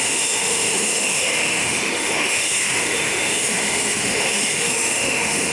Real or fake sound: fake